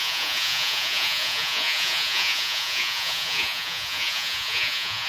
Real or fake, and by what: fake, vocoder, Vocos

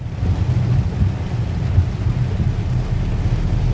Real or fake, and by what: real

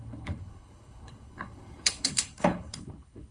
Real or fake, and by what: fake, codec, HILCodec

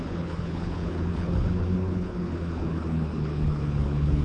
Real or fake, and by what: fake, codec, HILCodec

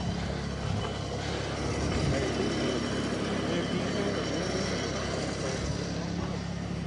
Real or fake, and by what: real